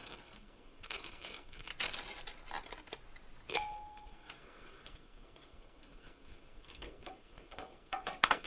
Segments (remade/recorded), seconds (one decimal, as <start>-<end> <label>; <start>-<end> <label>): 0.0-1.7 remade; 1.7-3.5 recorded; 3.5-8.5 remade